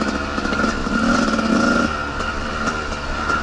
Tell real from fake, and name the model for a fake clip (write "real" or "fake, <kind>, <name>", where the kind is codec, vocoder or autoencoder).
real